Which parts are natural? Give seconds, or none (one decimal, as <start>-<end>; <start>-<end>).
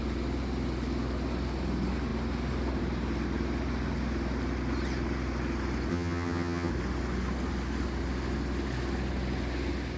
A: 0.0-5.9; 6.7-10.0